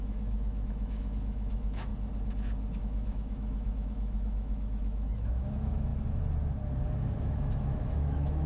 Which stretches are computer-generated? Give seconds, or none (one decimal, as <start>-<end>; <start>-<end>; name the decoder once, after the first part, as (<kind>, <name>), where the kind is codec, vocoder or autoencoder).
0.0-1.9 (autoencoder, DAC-VAE); 2.8-5.9; 7.2-8.5